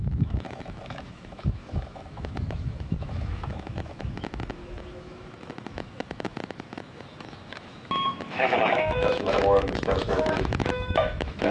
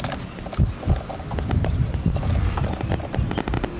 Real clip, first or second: second